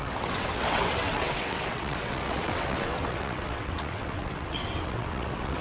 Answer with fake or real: fake